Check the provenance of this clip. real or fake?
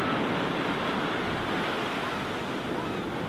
real